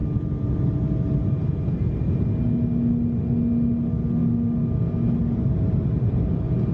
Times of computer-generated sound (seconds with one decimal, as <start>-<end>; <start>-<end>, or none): none